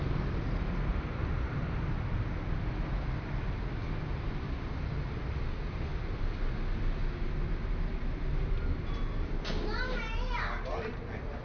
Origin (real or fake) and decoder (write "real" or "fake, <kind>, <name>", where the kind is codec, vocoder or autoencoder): real